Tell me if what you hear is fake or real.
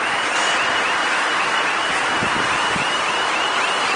fake